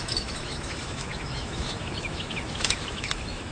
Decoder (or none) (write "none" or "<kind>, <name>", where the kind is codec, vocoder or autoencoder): autoencoder, DAC-VAE